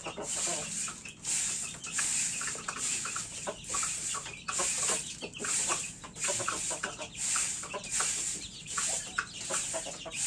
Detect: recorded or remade recorded